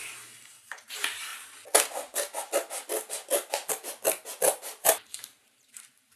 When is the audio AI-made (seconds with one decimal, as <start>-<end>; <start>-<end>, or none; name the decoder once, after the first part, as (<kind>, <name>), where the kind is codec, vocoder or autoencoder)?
0.0-1.3 (vocoder, BigVGAN v2); 4.4-6.2